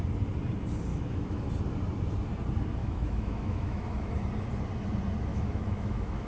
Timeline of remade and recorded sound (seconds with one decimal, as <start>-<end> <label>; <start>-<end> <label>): 0.0-0.9 recorded; 0.9-1.5 remade; 1.5-2.8 recorded; 2.8-4.1 remade; 4.1-5.3 recorded; 5.3-6.3 remade